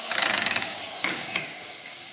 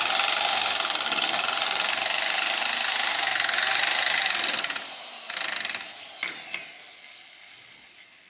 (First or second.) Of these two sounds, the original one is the second